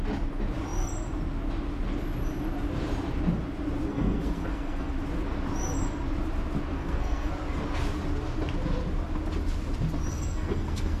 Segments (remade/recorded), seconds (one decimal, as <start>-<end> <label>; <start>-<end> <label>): 0.0-3.9 recorded; 3.9-4.9 remade; 4.9-6.7 recorded; 6.7-7.3 remade; 7.3-10.1 recorded; 10.1-11.0 remade

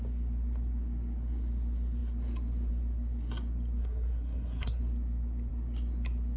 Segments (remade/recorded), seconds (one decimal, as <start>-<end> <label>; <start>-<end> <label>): 0.0-3.8 recorded; 3.8-4.8 remade; 4.8-6.4 recorded

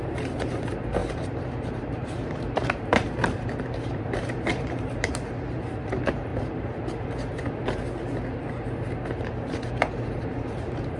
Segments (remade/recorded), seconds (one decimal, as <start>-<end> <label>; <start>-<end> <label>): 0.0-6.3 remade; 6.3-9.7 recorded; 9.7-11.0 remade